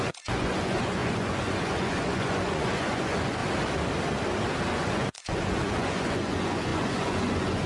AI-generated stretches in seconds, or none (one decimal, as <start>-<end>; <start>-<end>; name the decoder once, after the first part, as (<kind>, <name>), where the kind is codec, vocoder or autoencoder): 0.0-3.4 (vocoder, Vocos); 4.7-7.7